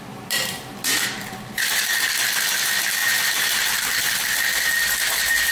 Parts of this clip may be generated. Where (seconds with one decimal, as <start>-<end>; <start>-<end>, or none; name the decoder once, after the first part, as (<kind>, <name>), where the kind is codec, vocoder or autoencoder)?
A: 0.0-5.5 (vocoder, BigVGAN v2)